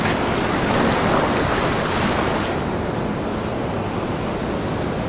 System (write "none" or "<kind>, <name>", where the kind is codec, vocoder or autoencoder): none